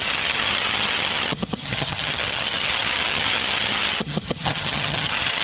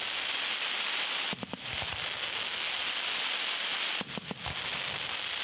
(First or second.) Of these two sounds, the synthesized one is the first